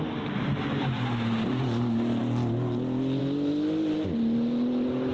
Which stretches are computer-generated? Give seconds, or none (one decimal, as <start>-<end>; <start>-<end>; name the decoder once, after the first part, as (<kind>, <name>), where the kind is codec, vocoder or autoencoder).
none